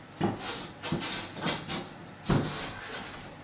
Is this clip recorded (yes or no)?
yes